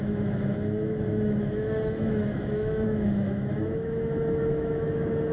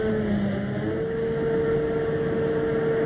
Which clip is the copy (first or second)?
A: first